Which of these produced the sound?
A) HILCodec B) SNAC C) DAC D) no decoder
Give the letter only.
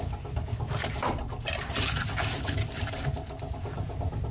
D